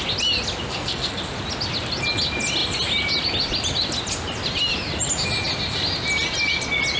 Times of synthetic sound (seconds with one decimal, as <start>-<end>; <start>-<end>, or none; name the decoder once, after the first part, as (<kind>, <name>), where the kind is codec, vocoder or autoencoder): 0.7-1.2 (codec, SNAC)